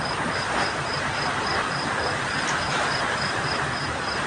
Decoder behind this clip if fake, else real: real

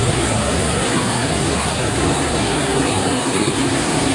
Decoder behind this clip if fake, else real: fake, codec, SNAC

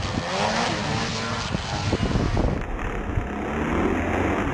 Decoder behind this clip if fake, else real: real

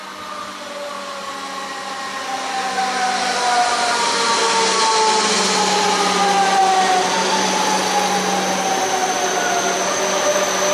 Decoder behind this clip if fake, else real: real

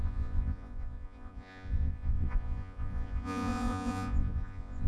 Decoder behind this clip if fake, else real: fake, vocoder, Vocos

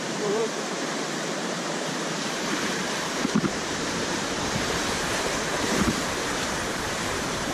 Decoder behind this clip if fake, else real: fake, vocoder, BigVGAN v2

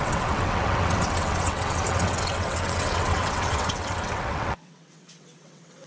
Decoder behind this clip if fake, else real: fake, vocoder, WaveNeXt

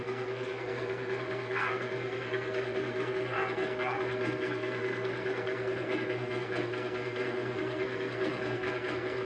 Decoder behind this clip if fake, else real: fake, codec, SNAC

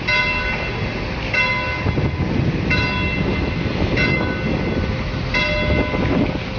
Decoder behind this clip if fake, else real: real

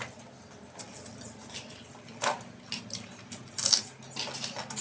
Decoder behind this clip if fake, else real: real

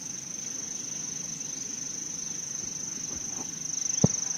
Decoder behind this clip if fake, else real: real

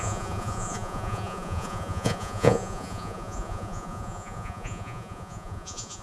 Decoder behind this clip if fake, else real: fake, vocoder, Vocos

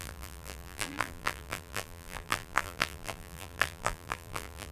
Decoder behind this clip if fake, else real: fake, vocoder, BigVGAN v2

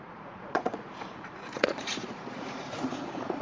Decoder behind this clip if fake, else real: fake, vocoder, Vocos